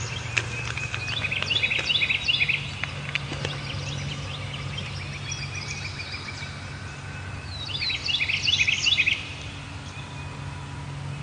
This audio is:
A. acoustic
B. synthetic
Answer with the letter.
A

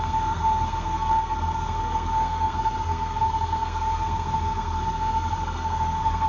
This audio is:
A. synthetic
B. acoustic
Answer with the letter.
A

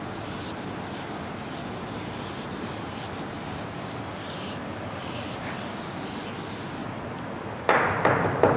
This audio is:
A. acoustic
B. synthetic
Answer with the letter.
A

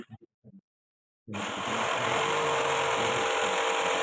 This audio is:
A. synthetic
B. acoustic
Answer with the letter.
B